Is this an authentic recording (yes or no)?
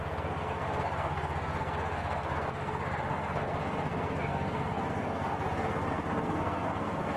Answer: no